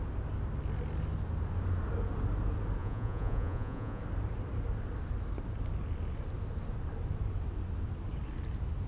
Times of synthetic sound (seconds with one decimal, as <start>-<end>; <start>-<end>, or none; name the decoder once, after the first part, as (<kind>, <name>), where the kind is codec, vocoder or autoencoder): 2.8-4.0 (vocoder, Vocos)